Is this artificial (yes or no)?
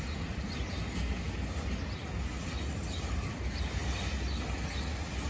no